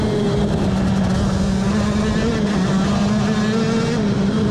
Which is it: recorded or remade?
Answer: recorded